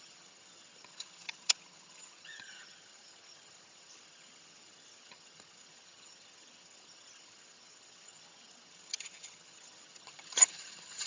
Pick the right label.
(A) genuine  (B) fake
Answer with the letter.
B